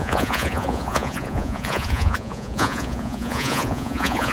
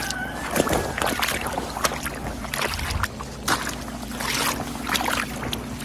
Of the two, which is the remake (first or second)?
first